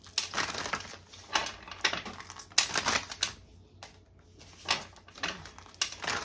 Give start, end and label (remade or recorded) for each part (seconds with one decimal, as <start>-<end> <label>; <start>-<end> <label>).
0.0-6.2 recorded